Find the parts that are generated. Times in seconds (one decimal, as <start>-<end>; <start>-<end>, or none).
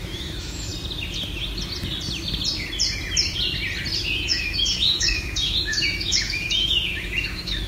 0.0-0.7; 4.0-7.7